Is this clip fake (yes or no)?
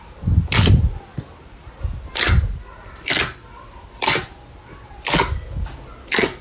no